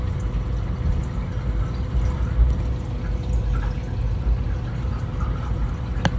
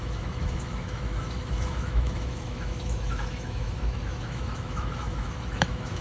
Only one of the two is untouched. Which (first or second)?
first